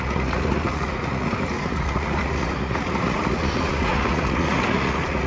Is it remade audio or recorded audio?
remade